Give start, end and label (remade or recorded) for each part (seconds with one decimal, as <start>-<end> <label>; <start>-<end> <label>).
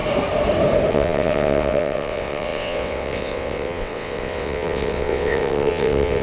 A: 0.0-0.9 recorded; 0.9-6.2 remade